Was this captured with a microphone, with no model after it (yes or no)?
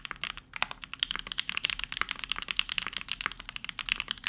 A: yes